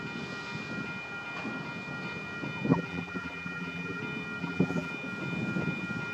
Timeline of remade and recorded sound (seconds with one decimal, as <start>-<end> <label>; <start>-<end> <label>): 0.0-2.7 recorded; 2.7-4.0 remade; 4.0-4.4 recorded; 4.4-4.9 remade; 4.9-6.1 recorded